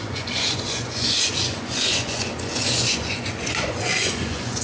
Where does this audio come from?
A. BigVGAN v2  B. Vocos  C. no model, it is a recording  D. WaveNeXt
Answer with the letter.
B